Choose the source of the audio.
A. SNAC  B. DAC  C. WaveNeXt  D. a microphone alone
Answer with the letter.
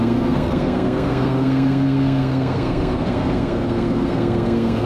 A